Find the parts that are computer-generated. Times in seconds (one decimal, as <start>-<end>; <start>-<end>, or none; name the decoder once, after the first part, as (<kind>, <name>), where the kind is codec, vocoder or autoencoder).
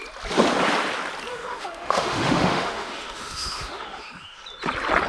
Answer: 1.3-4.4 (autoencoder, DAC-VAE)